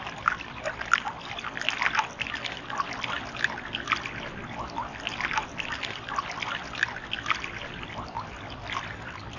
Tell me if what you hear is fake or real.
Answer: fake